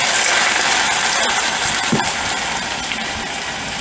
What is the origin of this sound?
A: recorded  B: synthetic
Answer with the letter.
A